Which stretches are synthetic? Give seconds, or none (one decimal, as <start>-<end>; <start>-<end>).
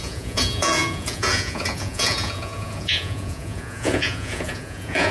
0.0-5.1